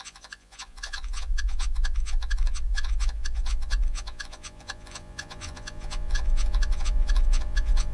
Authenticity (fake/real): fake